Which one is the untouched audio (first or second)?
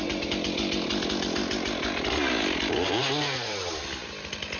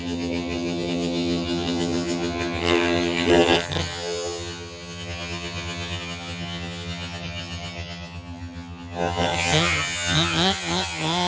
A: first